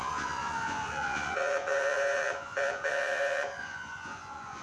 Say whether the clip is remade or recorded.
remade